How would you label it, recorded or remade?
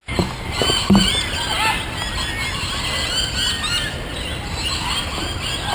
recorded